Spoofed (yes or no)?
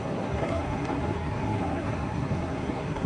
yes